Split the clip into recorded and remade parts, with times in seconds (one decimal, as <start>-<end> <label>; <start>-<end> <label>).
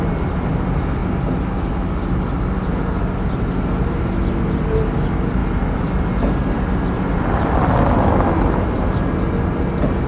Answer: 0.0-10.1 recorded